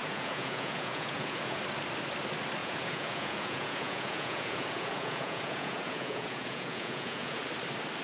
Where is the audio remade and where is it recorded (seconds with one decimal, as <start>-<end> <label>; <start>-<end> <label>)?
0.0-1.6 remade; 1.6-2.6 recorded; 2.6-7.4 remade; 7.4-8.0 recorded